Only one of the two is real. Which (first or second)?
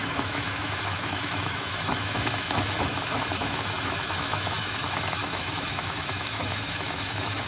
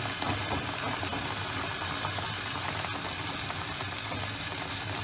second